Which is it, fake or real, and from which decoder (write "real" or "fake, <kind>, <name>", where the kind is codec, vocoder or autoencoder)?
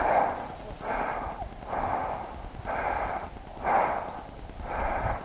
real